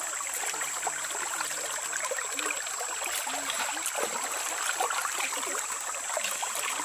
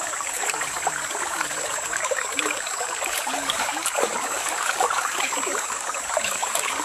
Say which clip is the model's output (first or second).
second